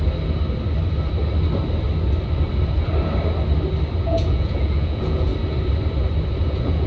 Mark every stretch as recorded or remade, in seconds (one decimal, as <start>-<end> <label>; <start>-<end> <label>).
0.0-4.0 recorded; 4.0-5.3 remade; 5.3-6.4 recorded; 6.4-6.9 remade